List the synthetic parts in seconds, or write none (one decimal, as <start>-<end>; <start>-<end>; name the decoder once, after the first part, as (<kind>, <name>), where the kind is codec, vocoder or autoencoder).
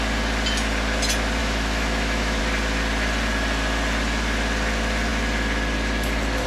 1.4-2.4 (autoencoder, DAC-VAE)